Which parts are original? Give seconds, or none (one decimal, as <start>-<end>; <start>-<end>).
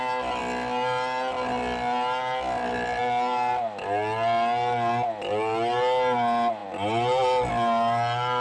0.0-8.4